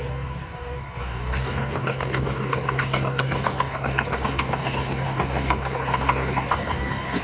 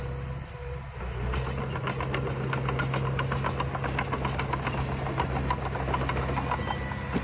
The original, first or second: second